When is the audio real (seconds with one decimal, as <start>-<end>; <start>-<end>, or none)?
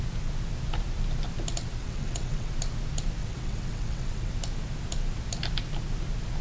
0.0-1.8; 2.5-3.2; 4.3-6.4